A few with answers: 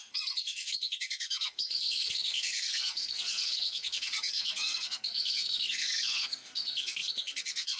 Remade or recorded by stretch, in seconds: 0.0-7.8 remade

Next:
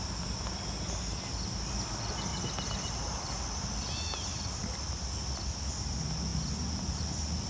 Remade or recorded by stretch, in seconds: 0.0-7.5 recorded

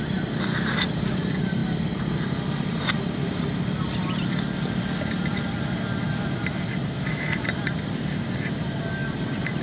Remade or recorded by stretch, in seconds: 0.0-1.6 remade; 1.6-2.9 recorded; 2.9-9.6 remade

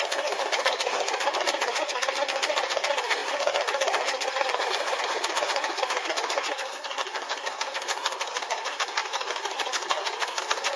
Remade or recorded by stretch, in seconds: 0.0-10.8 remade

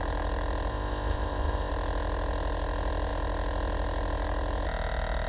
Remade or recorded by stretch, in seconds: 0.0-0.7 recorded; 0.7-1.7 remade; 1.7-5.3 recorded

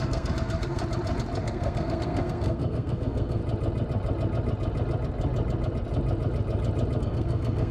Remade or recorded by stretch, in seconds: 0.0-0.8 remade; 0.8-1.4 recorded; 1.4-3.4 remade; 3.4-7.0 recorded; 7.0-7.7 remade

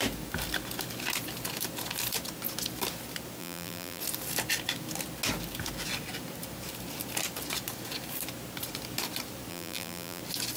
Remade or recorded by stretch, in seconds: 0.0-3.4 recorded; 3.4-4.0 remade; 4.0-9.5 recorded; 9.5-10.2 remade; 10.2-10.6 recorded

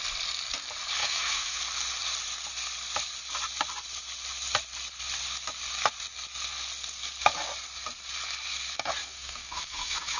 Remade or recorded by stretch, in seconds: 0.0-1.0 recorded; 1.0-1.6 remade; 1.6-9.0 recorded; 9.0-10.2 remade